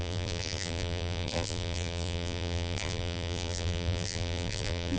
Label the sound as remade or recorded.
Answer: remade